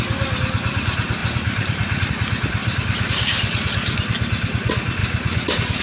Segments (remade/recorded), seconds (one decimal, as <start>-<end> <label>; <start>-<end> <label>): 0.0-1.2 recorded; 1.2-2.1 remade; 2.1-2.6 recorded; 2.6-3.1 remade; 3.1-5.0 recorded; 5.0-5.8 remade